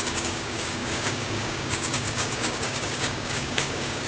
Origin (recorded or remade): remade